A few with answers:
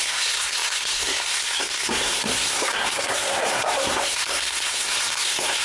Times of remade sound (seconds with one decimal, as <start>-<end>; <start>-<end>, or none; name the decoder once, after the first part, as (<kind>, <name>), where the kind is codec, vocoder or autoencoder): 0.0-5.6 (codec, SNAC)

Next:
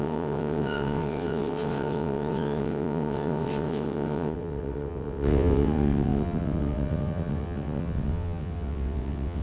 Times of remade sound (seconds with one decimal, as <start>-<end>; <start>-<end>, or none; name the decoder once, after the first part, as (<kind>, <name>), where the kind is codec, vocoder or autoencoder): 0.0-9.4 (vocoder, WaveNeXt)

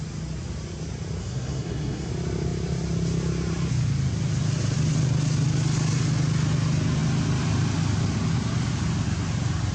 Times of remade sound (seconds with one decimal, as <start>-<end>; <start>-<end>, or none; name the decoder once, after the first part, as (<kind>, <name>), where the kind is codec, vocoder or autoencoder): 1.2-2.1 (codec, SNAC)

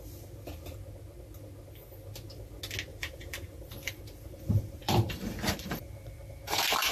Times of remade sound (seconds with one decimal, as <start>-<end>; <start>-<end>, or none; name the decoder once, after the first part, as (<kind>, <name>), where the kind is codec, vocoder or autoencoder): 2.9-6.9 (vocoder, BigVGAN v2)